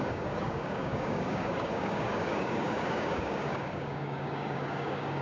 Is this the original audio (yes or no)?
no